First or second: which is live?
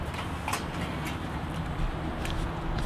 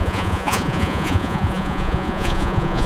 first